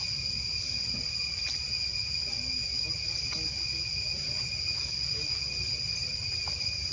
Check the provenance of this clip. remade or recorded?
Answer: recorded